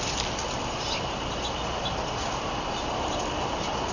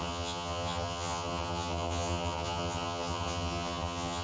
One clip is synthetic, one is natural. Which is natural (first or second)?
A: first